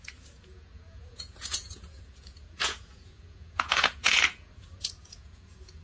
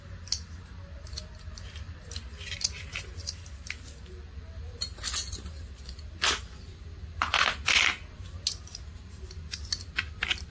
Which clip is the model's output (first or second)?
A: first